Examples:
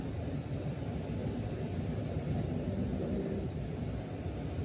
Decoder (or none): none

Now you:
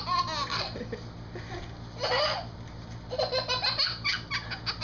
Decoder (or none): none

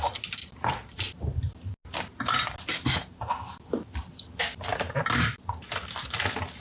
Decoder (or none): none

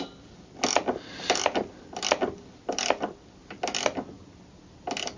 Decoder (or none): none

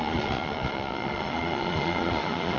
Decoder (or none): vocoder, Vocos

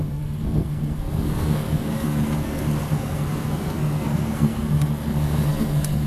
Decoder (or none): codec, SNAC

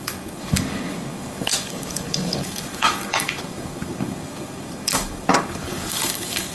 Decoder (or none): codec, DAC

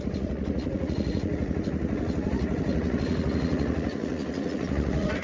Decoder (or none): vocoder, Vocos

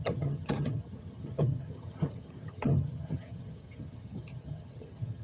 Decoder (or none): vocoder, HiFi-GAN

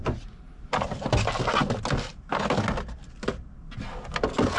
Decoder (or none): none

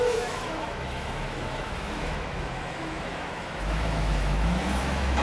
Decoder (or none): autoencoder, DAC-VAE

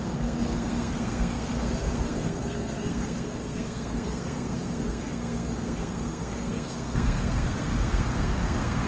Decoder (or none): codec, SNAC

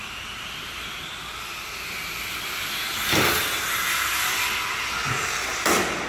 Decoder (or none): none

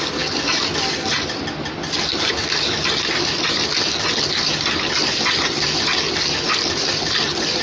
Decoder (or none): none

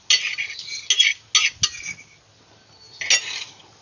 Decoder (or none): none